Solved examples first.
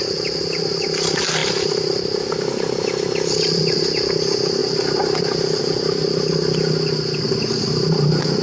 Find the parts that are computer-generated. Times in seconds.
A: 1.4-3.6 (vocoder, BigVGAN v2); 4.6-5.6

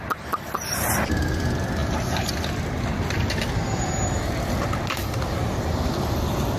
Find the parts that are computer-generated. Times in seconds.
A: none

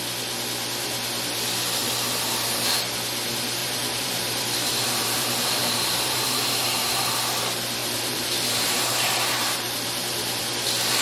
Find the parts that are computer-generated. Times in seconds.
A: 3.6-7.1 (vocoder, BigVGAN v2); 7.8-10.4

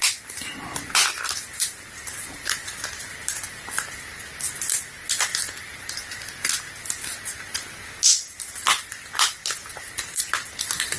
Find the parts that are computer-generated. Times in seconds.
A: 5.3-5.8 (vocoder, BigVGAN v2)

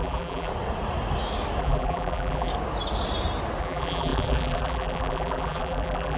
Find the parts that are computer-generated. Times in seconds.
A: 0.0-0.5 (vocoder, BigVGAN v2); 1.6-2.5; 3.6-6.2

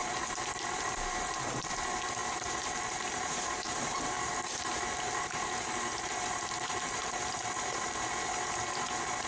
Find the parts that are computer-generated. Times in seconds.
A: 0.0-1.6 (vocoder, BigVGAN v2); 2.2-7.1